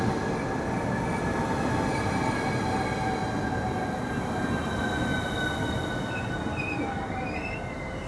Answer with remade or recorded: recorded